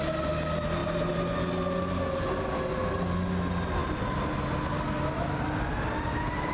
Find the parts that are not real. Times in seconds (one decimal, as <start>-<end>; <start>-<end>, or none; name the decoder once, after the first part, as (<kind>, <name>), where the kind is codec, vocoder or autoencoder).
none